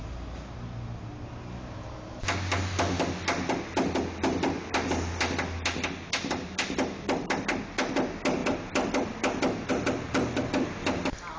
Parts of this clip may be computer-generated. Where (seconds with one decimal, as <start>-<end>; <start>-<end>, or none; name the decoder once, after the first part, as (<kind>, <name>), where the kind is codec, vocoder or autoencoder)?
none